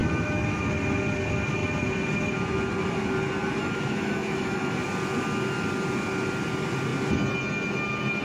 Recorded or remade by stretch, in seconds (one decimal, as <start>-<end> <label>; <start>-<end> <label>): 0.0-0.6 remade; 0.6-3.6 recorded; 3.6-4.6 remade; 4.6-8.2 recorded